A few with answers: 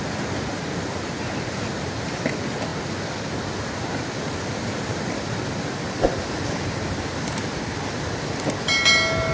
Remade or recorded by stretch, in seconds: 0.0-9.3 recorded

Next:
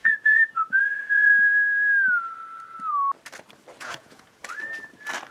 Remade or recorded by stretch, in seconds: 0.0-1.3 remade; 1.3-3.8 recorded; 3.8-4.4 remade; 4.4-5.3 recorded

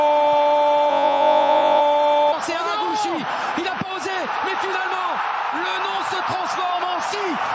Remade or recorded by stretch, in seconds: 0.0-0.9 recorded; 0.9-1.8 remade; 1.8-7.5 recorded

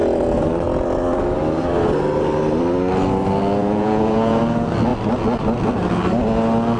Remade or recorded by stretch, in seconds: 0.0-3.6 recorded; 3.6-4.4 remade; 4.4-6.8 recorded

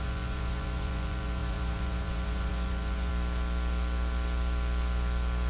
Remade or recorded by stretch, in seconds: 0.0-3.1 remade; 3.1-5.5 recorded